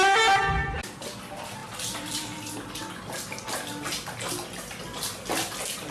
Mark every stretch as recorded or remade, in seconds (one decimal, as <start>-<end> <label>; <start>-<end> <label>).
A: 0.0-5.9 recorded